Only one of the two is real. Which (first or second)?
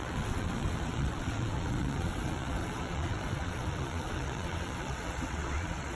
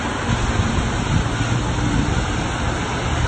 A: second